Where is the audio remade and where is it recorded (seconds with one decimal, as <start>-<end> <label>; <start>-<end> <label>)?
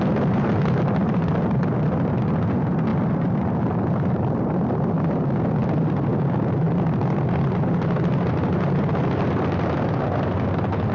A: 0.0-10.9 recorded